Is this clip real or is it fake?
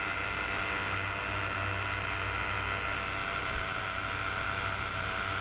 real